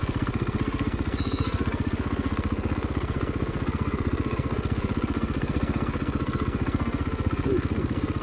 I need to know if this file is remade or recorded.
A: remade